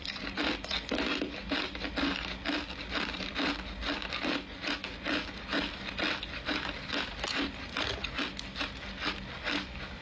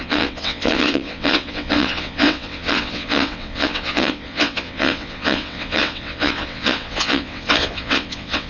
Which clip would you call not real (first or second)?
second